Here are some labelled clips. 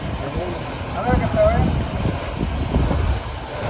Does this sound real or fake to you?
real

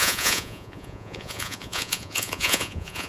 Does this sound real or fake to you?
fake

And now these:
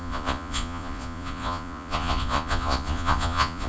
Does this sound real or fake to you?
fake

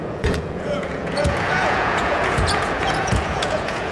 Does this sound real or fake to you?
fake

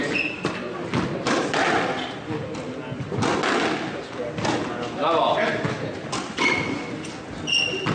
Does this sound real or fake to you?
real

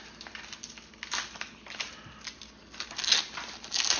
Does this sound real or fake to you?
real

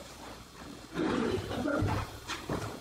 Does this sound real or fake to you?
fake